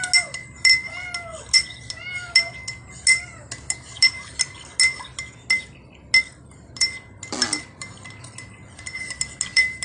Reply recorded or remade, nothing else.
recorded